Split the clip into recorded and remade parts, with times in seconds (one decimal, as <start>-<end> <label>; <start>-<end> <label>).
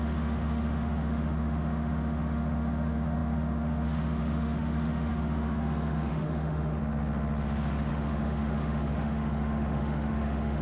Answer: 0.0-6.8 remade; 6.8-7.9 recorded; 7.9-10.6 remade